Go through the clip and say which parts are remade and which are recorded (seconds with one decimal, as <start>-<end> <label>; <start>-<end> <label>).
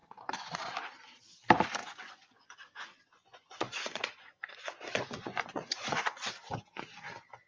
0.0-0.6 remade; 0.6-1.8 recorded; 1.8-6.3 remade; 6.3-7.5 recorded